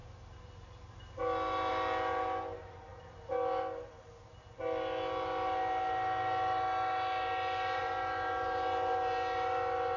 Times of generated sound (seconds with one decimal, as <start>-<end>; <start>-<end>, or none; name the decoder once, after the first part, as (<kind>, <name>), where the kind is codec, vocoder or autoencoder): none